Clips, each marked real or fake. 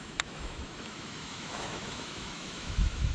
fake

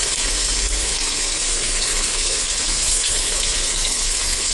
fake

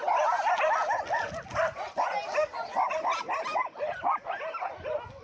real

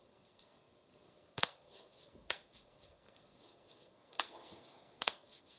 fake